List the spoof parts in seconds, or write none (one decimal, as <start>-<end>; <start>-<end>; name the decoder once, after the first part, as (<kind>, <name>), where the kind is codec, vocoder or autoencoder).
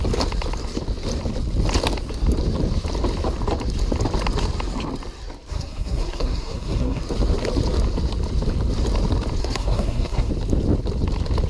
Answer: 5.5-7.0 (codec, SNAC); 9.4-10.3